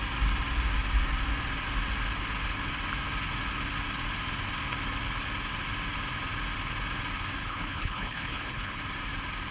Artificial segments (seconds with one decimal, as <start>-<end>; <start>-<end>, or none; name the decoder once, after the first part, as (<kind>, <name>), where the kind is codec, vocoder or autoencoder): 7.4-8.8 (codec, HILCodec)